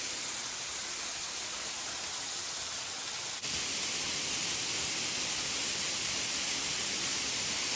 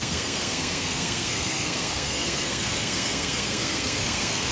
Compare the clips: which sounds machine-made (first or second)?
second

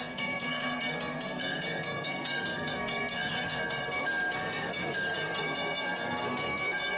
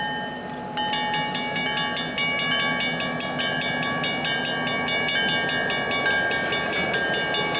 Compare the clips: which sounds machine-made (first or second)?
first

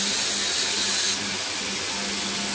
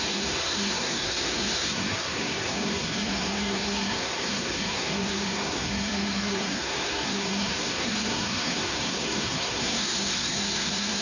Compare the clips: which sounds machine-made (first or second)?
second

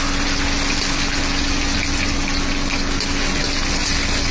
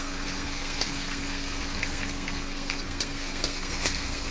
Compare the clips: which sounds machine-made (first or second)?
second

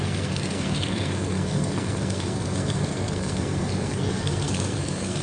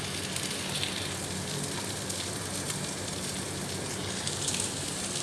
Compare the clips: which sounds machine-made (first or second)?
first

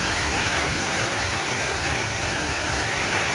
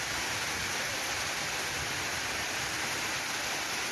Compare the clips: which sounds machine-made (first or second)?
first